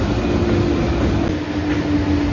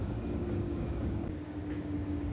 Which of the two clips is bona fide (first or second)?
first